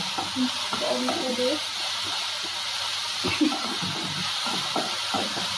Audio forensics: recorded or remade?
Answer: recorded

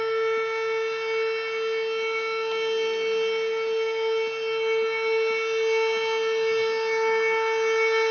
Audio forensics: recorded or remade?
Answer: recorded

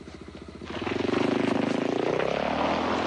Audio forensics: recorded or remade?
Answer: recorded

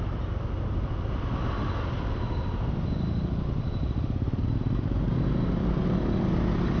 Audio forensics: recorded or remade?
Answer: recorded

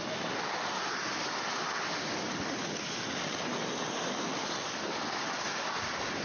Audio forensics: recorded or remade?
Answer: recorded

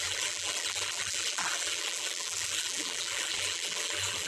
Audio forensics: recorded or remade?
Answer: remade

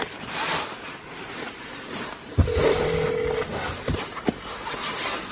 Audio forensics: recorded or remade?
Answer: recorded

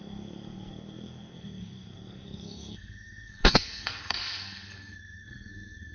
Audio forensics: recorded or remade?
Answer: remade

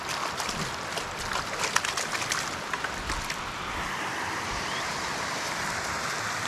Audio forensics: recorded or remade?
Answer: recorded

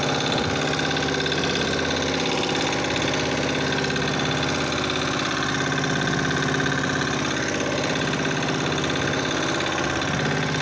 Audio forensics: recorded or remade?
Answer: recorded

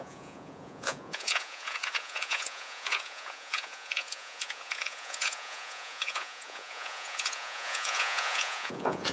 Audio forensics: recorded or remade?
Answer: remade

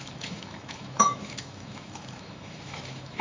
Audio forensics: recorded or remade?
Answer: remade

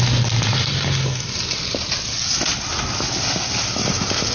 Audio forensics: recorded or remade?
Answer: recorded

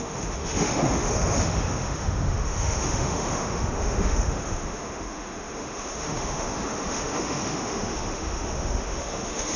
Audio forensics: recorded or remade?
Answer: remade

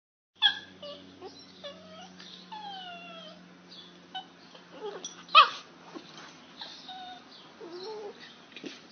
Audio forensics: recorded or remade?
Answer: recorded